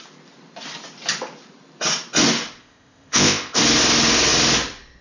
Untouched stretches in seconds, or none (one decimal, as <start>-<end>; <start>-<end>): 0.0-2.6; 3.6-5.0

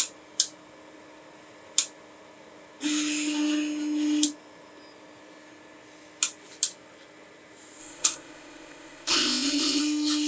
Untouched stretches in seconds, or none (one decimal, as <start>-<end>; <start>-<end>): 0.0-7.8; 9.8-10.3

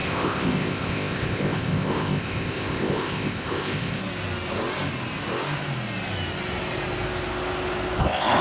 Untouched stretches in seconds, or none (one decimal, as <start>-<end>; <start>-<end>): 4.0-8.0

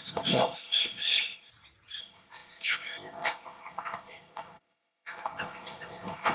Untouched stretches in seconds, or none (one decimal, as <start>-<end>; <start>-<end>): 1.5-2.0

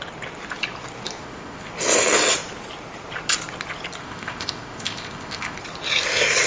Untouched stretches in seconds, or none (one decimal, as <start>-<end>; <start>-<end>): 0.0-1.2; 1.7-4.0; 5.6-6.5

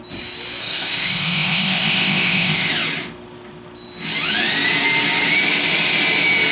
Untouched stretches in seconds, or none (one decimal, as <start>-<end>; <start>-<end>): 0.0-0.6; 2.7-6.5

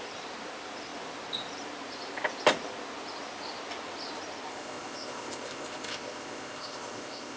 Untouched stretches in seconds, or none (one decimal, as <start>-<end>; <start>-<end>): 0.0-4.5

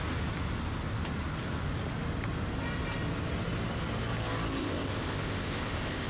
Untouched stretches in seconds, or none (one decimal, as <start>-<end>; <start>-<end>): 0.0-4.6